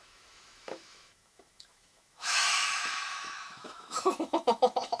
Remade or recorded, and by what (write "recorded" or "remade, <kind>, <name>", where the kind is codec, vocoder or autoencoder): remade, autoencoder, DAC-VAE